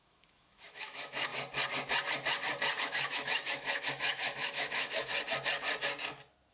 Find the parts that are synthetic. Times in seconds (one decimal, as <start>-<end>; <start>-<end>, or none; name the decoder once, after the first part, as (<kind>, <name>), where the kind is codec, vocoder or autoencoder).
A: 0.0-1.3 (autoencoder, DAC-VAE); 2.8-5.1